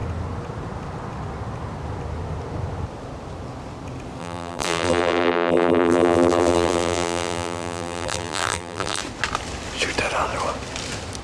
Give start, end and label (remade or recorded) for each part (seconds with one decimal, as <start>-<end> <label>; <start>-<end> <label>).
0.0-4.2 recorded; 4.2-9.0 remade; 9.0-11.2 recorded